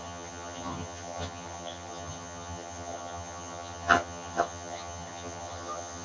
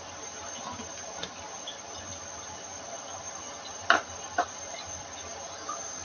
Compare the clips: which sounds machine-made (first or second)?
first